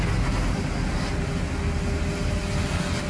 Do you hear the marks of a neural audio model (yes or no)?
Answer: no